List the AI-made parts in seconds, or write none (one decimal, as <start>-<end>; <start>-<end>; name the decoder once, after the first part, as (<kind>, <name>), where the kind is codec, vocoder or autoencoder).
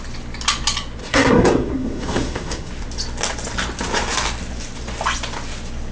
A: 1.0-2.7 (codec, SNAC)